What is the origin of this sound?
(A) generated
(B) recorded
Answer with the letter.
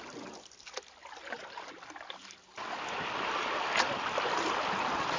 B